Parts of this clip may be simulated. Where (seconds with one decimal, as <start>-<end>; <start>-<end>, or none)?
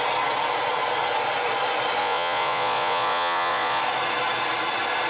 2.0-3.8